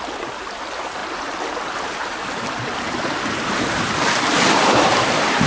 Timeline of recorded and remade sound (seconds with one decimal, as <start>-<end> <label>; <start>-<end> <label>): 0.0-5.5 recorded